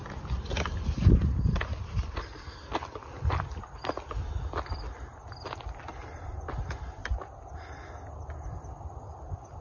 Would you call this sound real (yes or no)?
yes